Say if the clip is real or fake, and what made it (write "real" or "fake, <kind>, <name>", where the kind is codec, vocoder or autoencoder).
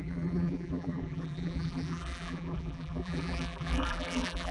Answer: fake, vocoder, BigVGAN v2